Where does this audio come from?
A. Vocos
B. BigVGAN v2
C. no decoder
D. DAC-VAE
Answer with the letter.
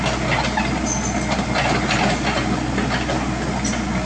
C